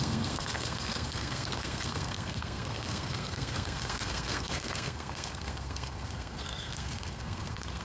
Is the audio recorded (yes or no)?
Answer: no